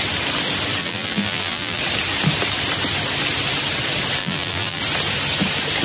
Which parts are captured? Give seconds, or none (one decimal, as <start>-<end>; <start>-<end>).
0.0-0.8; 1.8-4.2; 4.8-5.8